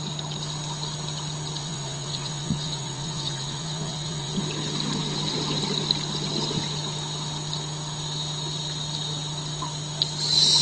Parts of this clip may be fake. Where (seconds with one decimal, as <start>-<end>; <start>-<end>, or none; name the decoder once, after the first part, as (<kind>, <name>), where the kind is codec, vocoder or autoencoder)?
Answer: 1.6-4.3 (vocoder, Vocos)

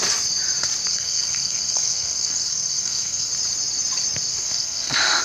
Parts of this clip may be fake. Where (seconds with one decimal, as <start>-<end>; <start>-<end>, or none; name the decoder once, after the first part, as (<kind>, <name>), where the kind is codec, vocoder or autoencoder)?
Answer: 0.9-3.3 (codec, SNAC); 4.3-5.2

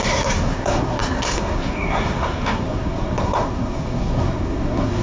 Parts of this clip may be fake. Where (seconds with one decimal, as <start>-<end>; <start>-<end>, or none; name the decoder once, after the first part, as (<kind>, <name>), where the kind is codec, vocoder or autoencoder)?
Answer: 0.0-5.0 (codec, SNAC)

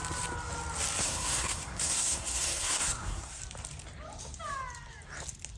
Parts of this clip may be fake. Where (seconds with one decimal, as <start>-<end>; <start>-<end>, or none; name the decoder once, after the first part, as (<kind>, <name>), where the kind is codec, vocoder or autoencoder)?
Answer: 1.0-3.4 (codec, SNAC)